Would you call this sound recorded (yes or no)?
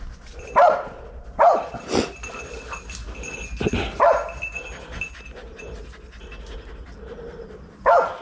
yes